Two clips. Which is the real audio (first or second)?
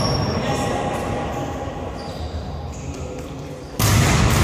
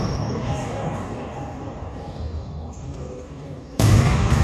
first